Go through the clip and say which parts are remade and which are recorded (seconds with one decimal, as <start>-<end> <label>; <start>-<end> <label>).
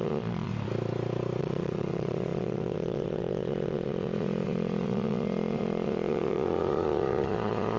0.0-0.5 remade; 0.5-1.4 recorded; 1.4-7.8 remade